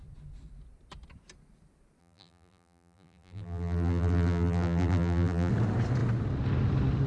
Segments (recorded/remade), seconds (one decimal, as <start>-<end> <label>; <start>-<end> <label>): 0.0-2.0 recorded; 2.0-5.5 remade; 5.5-7.1 recorded